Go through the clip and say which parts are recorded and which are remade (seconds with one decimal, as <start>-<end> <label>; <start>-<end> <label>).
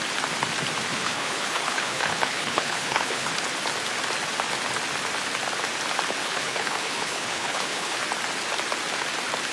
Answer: 0.0-0.9 recorded; 0.9-3.3 remade; 3.3-6.2 recorded; 6.2-8.0 remade; 8.0-9.5 recorded